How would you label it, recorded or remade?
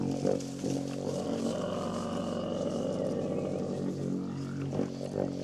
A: recorded